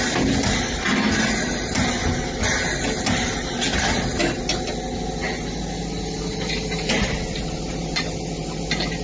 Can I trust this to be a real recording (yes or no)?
yes